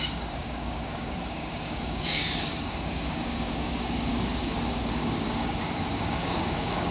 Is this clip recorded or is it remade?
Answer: remade